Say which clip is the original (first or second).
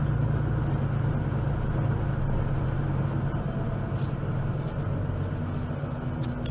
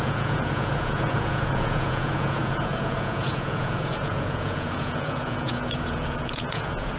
first